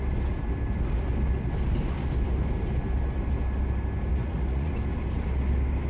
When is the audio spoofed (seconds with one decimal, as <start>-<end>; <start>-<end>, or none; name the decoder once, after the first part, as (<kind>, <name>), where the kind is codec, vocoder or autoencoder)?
4.1-4.7 (vocoder, Vocos)